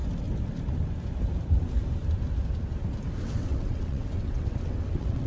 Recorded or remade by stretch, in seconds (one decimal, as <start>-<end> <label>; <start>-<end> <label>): 0.0-3.2 recorded; 3.2-5.3 remade